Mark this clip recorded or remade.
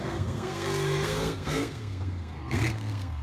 remade